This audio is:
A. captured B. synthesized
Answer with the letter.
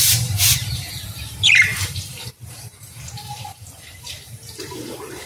B